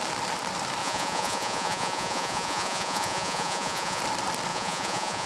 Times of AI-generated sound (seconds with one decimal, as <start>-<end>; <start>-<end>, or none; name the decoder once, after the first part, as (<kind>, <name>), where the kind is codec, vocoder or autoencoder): 0.8-4.0 (vocoder, Vocos); 4.5-5.3